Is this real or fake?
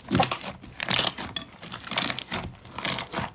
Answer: real